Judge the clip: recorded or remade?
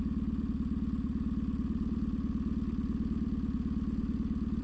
recorded